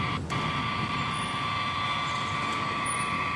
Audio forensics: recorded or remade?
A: recorded